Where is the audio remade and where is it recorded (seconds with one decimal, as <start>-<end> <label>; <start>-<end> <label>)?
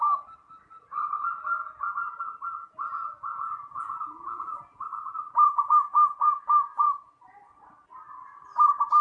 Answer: 0.0-1.6 recorded; 1.6-2.2 remade; 2.2-2.6 recorded; 2.6-7.1 remade; 7.1-9.0 recorded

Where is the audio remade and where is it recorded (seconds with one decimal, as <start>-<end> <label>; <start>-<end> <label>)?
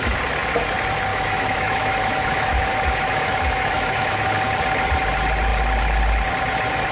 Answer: 0.0-1.1 recorded; 1.1-4.3 remade; 4.3-6.9 recorded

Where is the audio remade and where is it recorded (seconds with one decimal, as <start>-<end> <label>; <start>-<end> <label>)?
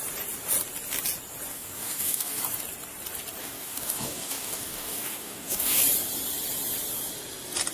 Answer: 0.0-1.5 recorded; 1.5-2.4 remade; 2.4-3.4 recorded; 3.4-5.8 remade; 5.8-7.7 recorded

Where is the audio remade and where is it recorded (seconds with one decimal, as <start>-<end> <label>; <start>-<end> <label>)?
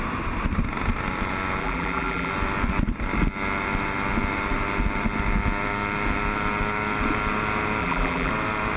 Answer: 0.0-1.6 recorded; 1.6-2.3 remade; 2.3-7.8 recorded; 7.8-8.3 remade; 8.3-8.8 recorded